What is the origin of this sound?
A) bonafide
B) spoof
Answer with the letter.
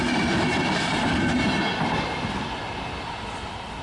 A